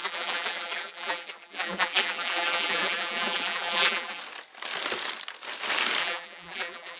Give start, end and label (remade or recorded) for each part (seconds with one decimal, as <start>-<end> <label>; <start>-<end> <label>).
0.0-4.2 remade; 4.2-6.0 recorded; 6.0-7.0 remade